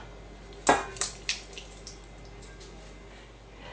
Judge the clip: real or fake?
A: real